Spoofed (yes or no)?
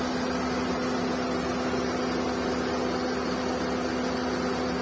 no